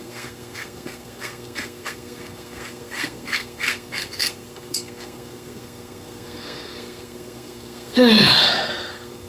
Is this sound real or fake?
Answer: fake